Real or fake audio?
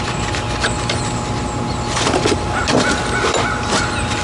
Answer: real